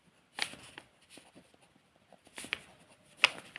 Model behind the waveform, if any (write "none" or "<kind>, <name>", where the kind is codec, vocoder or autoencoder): none